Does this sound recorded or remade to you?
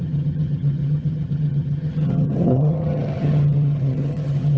remade